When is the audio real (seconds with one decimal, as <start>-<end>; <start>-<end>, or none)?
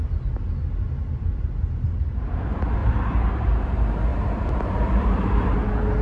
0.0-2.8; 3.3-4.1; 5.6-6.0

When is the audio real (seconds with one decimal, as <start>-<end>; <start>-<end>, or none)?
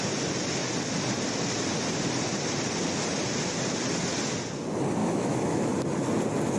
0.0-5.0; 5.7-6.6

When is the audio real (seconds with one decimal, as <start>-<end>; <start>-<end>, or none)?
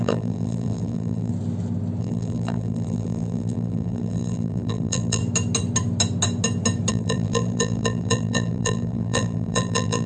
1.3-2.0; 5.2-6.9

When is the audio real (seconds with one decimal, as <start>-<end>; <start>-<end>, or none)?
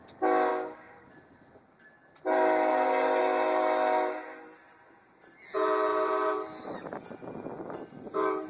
0.0-5.9; 6.8-8.5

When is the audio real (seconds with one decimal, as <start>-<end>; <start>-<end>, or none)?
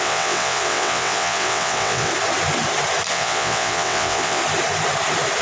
2.1-3.1; 4.4-5.4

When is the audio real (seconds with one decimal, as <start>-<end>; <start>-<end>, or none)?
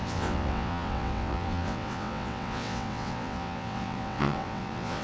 none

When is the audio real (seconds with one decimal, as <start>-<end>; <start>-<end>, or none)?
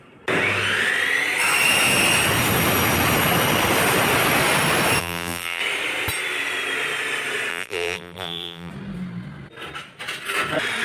0.0-5.0; 5.6-7.5; 8.7-10.8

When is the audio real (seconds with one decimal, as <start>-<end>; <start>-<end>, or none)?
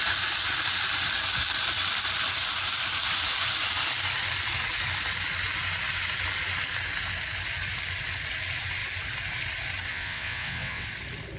0.0-9.9; 10.9-11.4